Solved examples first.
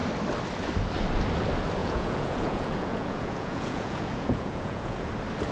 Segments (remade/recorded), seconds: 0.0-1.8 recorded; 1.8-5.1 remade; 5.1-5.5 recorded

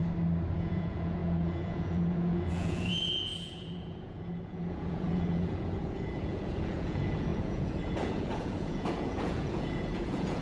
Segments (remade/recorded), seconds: 0.0-0.5 recorded; 0.5-10.4 remade

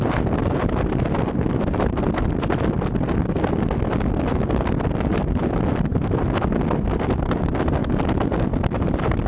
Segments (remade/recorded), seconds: 0.0-9.3 recorded

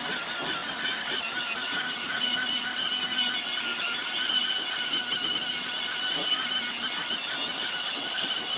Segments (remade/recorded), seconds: 0.0-0.6 recorded; 0.6-1.2 remade; 1.2-1.6 recorded; 1.6-2.2 remade; 2.2-8.6 recorded

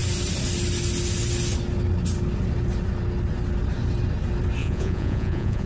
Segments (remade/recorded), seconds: 0.0-4.6 recorded; 4.6-5.7 remade

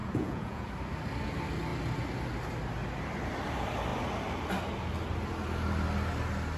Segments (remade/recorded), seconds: 0.0-0.7 remade; 0.7-6.6 recorded

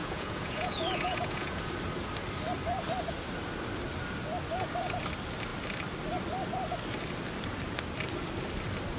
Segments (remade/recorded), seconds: 0.0-1.6 remade; 1.6-9.0 recorded

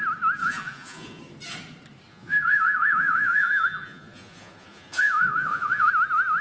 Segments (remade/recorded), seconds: 0.0-0.4 recorded; 0.4-1.2 remade; 1.2-2.1 recorded; 2.1-5.9 remade; 5.9-6.4 recorded